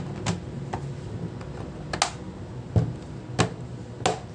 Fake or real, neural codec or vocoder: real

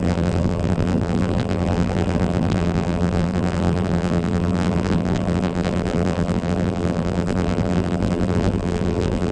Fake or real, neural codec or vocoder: fake, vocoder, BigVGAN v2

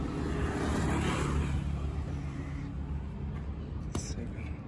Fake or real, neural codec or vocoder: real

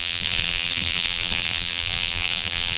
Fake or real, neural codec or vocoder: fake, vocoder, BigVGAN v2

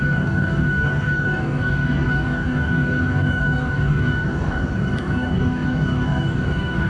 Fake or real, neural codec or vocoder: fake, codec, DAC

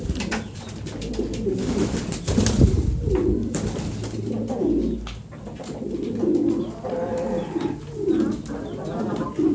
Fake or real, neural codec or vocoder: real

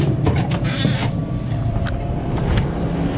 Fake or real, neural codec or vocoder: real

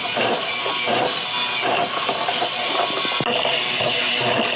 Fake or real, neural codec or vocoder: real